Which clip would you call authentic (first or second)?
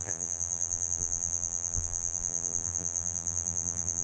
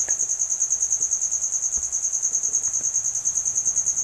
second